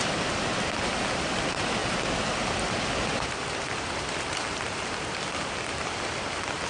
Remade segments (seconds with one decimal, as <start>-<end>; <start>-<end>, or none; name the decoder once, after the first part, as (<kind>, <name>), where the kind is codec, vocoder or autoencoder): 0.0-1.8 (vocoder, BigVGAN v2); 5.5-6.7